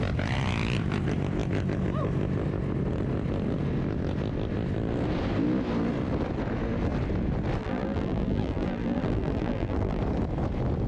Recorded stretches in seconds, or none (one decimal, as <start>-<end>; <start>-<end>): 0.0-7.6; 10.0-10.9